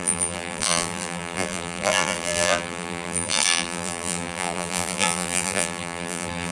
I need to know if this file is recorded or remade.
remade